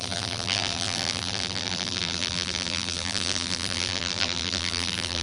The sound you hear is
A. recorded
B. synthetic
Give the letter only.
B